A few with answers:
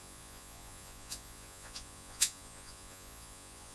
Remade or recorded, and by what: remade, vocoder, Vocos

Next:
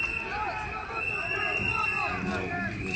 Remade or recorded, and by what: recorded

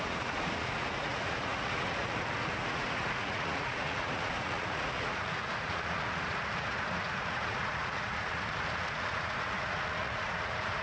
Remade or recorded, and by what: remade, vocoder, Vocos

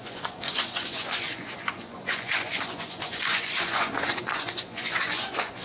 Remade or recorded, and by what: remade, vocoder, Vocos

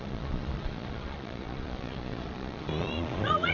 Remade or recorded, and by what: remade, vocoder, Vocos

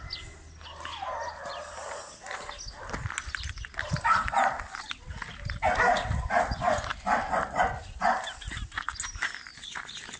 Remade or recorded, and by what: recorded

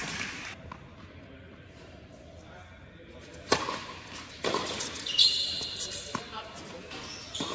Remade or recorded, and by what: recorded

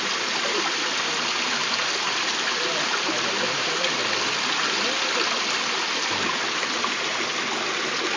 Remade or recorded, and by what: recorded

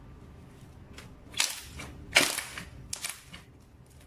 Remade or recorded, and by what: recorded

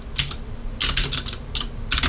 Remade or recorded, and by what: recorded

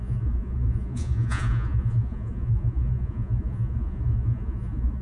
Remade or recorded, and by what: remade, vocoder, Vocos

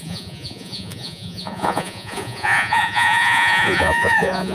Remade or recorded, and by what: remade, vocoder, Vocos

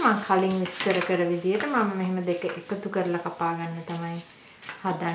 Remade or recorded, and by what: recorded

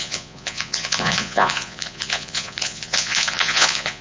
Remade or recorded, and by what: remade, vocoder, Vocos